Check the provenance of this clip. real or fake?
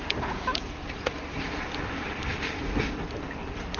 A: real